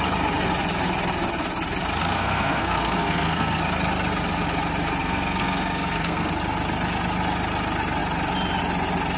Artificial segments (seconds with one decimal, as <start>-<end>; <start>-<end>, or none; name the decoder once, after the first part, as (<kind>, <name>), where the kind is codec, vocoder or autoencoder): 2.0-3.6 (codec, SNAC); 5.0-6.3